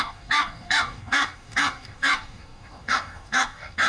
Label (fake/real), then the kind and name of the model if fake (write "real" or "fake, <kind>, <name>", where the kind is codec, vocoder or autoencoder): fake, codec, DAC